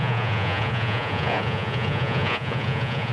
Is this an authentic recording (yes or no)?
no